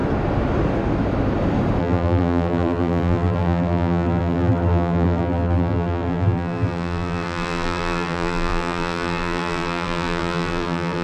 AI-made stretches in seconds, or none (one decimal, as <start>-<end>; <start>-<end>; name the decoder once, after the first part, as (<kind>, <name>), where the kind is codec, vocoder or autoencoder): 1.8-11.0 (vocoder, BigVGAN v2)

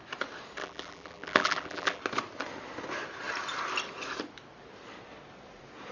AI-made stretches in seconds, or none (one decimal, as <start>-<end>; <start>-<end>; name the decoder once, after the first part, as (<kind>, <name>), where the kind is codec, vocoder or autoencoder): 0.6-2.0 (vocoder, BigVGAN v2)

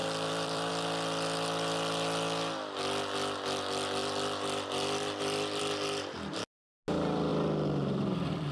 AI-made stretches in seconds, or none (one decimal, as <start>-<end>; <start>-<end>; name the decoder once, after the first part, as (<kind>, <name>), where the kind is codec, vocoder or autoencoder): 0.0-0.7 (vocoder, BigVGAN v2); 4.0-5.6; 7.3-8.5